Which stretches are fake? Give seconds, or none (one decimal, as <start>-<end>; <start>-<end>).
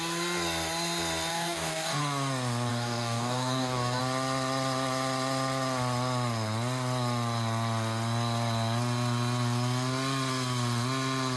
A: 1.3-2.0; 2.7-4.0